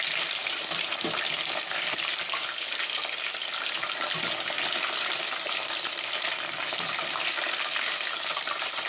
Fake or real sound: real